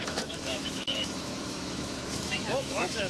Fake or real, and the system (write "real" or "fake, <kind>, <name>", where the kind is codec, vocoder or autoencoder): fake, autoencoder, DAC-VAE